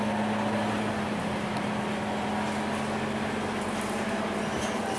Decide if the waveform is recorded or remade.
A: recorded